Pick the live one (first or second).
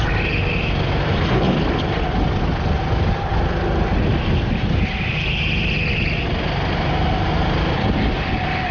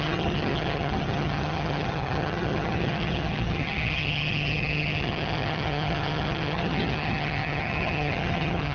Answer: first